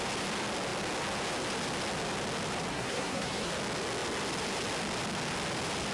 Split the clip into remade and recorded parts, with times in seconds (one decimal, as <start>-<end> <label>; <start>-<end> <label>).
0.0-2.7 recorded; 2.7-3.5 remade; 3.5-5.9 recorded